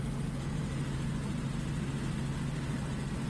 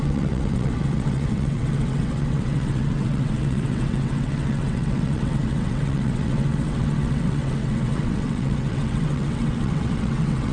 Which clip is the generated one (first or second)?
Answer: second